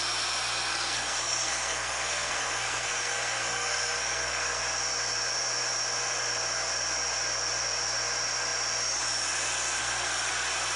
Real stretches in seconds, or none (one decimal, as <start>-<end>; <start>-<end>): 0.0-0.7; 4.6-9.8; 10.3-10.8

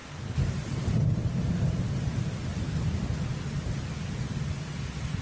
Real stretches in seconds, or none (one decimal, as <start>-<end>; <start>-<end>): 0.0-5.2